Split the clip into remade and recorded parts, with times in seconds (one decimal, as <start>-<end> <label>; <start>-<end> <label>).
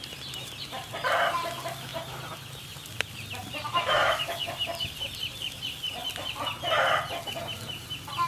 0.0-3.7 recorded; 3.7-4.5 remade; 4.5-8.3 recorded